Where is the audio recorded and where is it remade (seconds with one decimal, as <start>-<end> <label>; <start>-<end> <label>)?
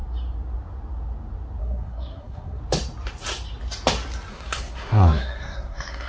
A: 0.0-1.6 recorded; 1.6-2.6 remade; 2.6-4.3 recorded; 4.3-6.1 remade